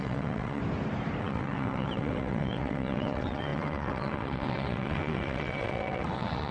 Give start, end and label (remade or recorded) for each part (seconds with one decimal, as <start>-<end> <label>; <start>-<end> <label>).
0.0-0.6 remade; 0.6-1.2 recorded; 1.2-6.5 remade